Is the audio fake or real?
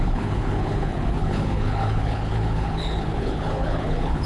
fake